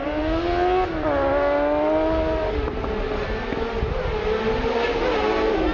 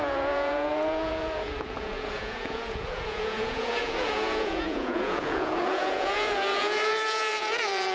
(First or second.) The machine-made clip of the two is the second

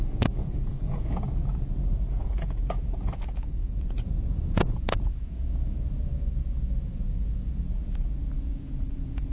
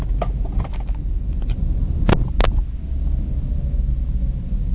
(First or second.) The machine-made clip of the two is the first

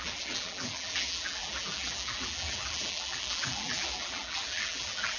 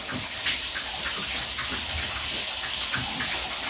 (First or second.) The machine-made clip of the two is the first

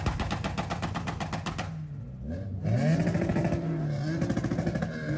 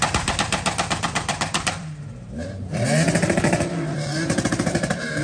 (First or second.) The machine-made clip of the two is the second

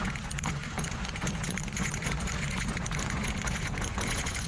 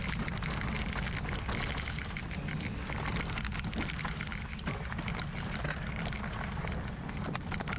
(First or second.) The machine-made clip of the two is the first